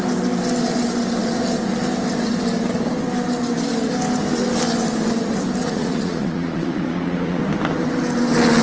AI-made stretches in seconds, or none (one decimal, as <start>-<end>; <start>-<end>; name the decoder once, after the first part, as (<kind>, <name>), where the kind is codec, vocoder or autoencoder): 5.6-7.4 (vocoder, Vocos)